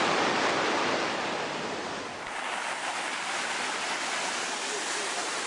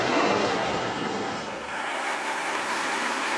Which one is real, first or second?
first